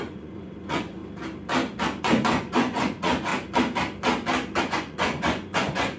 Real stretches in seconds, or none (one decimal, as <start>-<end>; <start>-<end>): 1.0-2.0; 3.3-4.6